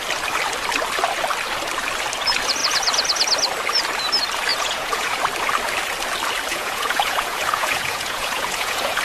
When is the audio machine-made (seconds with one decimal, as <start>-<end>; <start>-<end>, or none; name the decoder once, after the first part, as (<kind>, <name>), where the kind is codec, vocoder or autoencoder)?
4.5-5.2 (vocoder, Vocos); 6.5-9.0